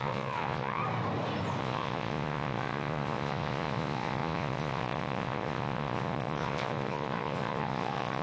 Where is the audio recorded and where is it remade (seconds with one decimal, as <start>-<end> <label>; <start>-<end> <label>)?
0.0-0.8 remade; 0.8-1.6 recorded; 1.6-8.2 remade